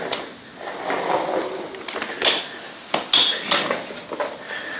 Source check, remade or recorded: recorded